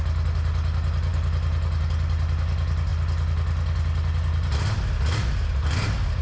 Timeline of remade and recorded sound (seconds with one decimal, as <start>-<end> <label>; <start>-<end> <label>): 0.0-6.2 recorded